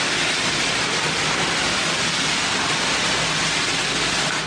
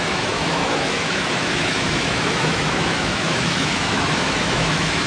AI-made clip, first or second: second